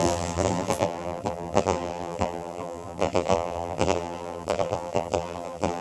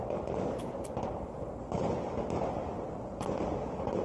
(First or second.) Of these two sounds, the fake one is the first